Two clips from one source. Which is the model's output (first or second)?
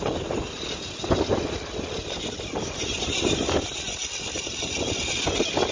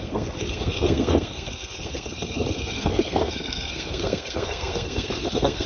second